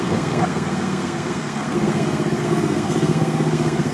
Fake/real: fake